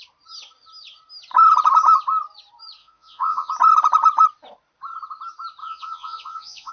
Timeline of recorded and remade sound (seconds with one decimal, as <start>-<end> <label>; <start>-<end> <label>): 0.0-2.8 recorded; 2.8-3.5 remade; 3.5-5.6 recorded; 5.6-6.7 remade